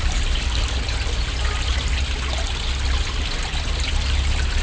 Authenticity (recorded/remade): recorded